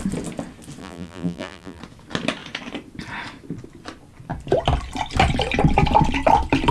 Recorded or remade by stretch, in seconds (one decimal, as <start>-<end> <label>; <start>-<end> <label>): 0.0-0.8 recorded; 0.8-1.8 remade; 1.8-6.7 recorded

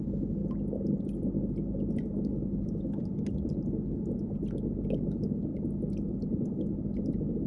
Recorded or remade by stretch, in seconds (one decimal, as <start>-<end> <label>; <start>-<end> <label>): 0.0-7.5 recorded

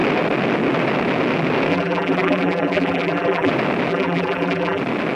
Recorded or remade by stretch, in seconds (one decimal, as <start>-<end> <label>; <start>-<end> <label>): 0.0-1.7 recorded; 1.7-3.5 remade; 3.5-3.9 recorded; 3.9-4.8 remade; 4.8-5.2 recorded

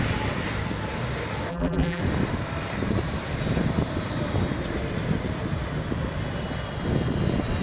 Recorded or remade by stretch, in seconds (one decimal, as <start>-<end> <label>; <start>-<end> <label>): 0.0-1.5 recorded; 1.5-2.0 remade; 2.0-7.6 recorded

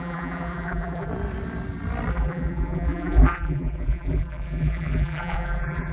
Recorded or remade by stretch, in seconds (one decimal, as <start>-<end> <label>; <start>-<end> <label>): 0.0-1.1 remade; 1.1-2.1 recorded; 2.1-5.9 remade

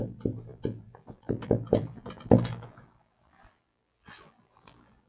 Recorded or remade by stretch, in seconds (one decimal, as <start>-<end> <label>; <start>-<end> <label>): 0.0-5.1 remade